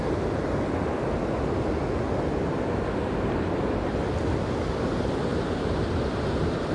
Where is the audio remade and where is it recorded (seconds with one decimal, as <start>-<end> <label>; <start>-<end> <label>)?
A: 0.0-5.3 recorded; 5.3-5.8 remade; 5.8-6.7 recorded